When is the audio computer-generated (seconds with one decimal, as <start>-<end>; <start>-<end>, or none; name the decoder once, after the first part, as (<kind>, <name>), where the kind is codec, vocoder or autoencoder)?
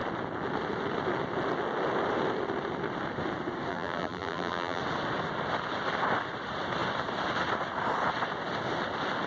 3.7-4.8 (vocoder, BigVGAN v2)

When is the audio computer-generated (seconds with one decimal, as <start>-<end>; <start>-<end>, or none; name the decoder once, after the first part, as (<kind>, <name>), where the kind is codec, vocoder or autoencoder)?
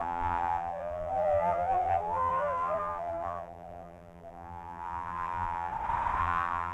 0.0-5.7 (vocoder, BigVGAN v2); 6.2-6.7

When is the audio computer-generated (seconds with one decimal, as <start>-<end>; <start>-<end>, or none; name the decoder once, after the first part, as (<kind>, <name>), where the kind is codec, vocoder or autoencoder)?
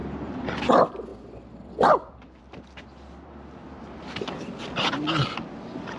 1.1-4.7 (vocoder, BigVGAN v2)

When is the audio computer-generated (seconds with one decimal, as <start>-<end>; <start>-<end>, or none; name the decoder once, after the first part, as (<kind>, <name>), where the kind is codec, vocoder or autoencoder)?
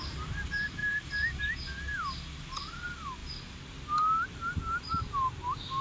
0.8-1.4 (vocoder, BigVGAN v2)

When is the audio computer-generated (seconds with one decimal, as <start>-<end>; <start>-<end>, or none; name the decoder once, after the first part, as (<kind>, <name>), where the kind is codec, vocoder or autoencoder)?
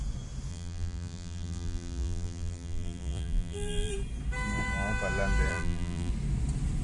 0.5-3.9 (vocoder, BigVGAN v2); 5.5-6.1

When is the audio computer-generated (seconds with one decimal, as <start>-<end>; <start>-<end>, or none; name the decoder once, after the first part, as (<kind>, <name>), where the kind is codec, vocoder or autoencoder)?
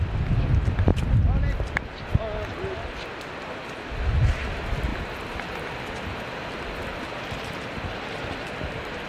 none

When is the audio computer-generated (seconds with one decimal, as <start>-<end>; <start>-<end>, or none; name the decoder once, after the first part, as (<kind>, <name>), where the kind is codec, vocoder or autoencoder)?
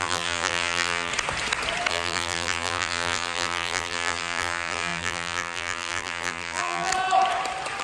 0.0-1.1 (vocoder, BigVGAN v2); 1.9-6.9